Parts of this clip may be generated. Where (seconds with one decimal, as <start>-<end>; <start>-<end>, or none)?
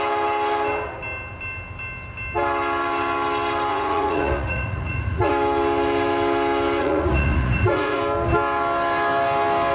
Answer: 3.7-5.3; 6.8-8.0